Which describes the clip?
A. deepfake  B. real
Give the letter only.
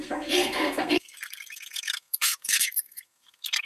A